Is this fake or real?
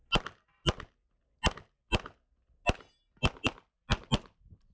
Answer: real